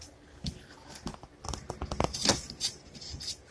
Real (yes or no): yes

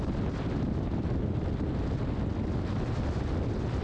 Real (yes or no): yes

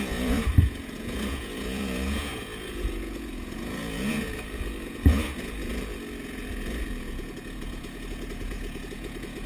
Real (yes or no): no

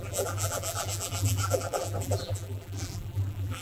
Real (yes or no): no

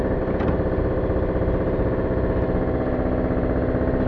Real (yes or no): yes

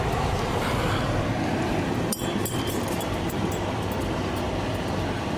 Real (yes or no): yes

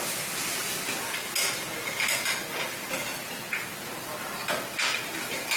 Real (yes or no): yes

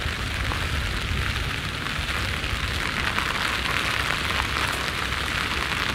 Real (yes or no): yes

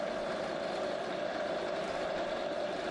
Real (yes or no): no